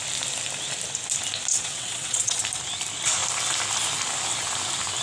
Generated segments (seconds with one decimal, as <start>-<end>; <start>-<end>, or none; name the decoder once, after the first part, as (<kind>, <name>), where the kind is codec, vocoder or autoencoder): 1.5-2.4 (vocoder, WaveNeXt)